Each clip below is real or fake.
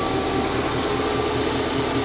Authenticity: real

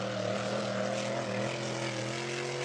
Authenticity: real